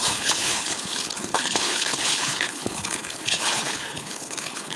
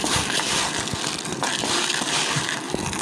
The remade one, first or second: first